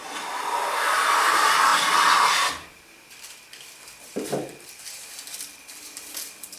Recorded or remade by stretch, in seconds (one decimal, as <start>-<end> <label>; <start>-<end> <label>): 0.0-6.6 recorded